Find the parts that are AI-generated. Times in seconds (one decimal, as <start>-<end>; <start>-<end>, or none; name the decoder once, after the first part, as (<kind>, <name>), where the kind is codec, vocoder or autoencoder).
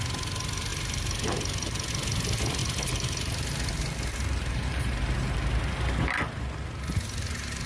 0.7-1.9 (vocoder, BigVGAN v2); 2.6-5.3